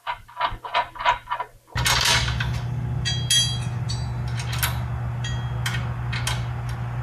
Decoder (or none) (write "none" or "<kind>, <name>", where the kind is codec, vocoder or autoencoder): none